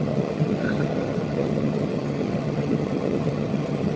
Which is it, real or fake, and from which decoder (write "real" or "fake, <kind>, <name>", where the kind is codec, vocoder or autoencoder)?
fake, vocoder, HiFi-GAN